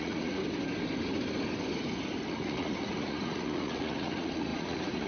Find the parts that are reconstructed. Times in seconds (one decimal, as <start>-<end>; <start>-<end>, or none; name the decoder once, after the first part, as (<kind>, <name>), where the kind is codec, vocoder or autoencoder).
0.0-0.4 (vocoder, Vocos); 2.3-5.1